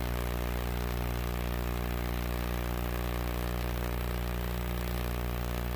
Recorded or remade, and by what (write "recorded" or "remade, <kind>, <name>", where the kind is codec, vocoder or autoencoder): recorded